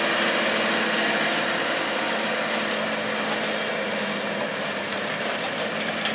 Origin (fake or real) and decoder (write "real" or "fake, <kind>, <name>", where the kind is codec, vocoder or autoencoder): real